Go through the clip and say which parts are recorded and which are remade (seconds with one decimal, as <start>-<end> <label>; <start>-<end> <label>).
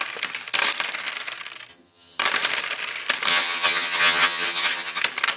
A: 0.0-1.7 recorded; 1.7-2.2 remade; 2.2-3.3 recorded; 3.3-5.0 remade; 5.0-5.4 recorded